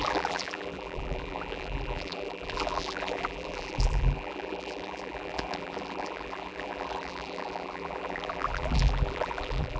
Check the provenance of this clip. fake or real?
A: fake